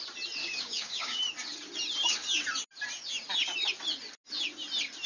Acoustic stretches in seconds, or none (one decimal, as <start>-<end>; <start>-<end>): 0.0-0.4; 1.2-5.1